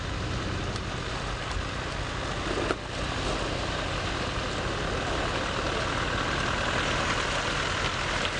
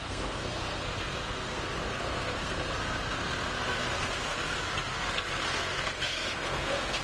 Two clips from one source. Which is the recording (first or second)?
first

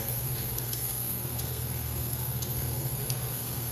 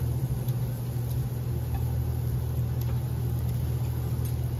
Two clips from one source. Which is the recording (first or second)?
second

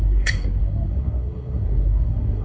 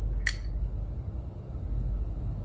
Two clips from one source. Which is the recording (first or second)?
second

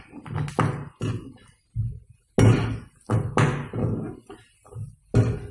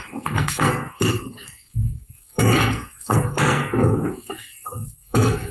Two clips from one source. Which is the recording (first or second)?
first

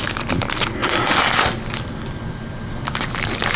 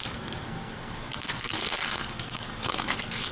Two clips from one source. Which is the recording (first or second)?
first